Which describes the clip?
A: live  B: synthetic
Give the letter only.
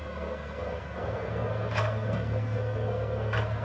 B